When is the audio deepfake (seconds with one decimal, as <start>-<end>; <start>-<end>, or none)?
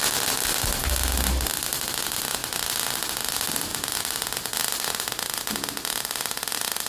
none